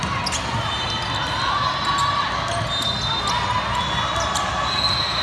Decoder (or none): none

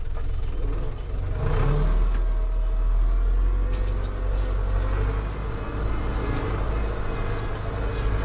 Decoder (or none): none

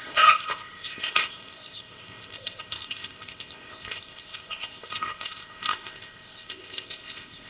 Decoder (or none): codec, ZipCodec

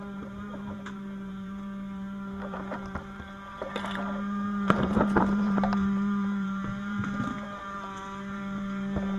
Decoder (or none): vocoder, BigVGAN v2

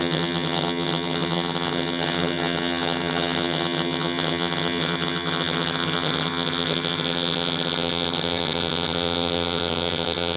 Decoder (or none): vocoder, HiFi-GAN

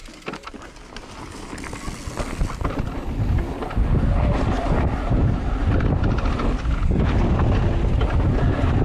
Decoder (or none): none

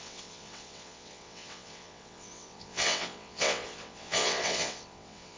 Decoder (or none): vocoder, WaveNeXt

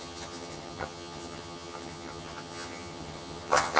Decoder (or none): vocoder, HiFi-GAN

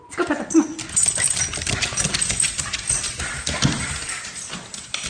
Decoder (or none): none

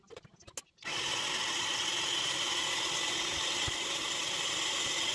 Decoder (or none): none